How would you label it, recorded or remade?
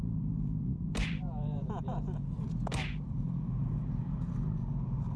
remade